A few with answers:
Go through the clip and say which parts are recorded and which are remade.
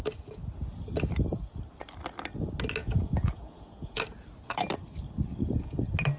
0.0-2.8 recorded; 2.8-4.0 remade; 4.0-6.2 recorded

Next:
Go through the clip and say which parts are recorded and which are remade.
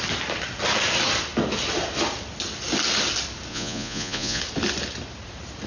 0.0-3.5 recorded; 3.5-4.4 remade; 4.4-5.7 recorded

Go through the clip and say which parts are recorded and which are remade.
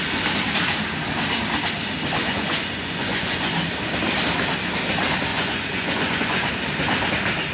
0.0-2.2 recorded; 2.2-3.5 remade; 3.5-5.3 recorded; 5.3-6.5 remade; 6.5-7.5 recorded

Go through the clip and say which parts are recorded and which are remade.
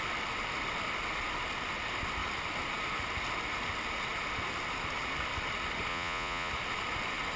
0.0-5.9 recorded; 5.9-6.5 remade; 6.5-7.4 recorded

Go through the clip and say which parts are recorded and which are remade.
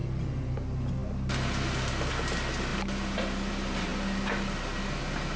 0.0-5.4 recorded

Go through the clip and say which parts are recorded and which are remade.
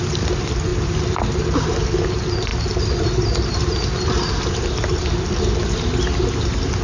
0.0-6.8 recorded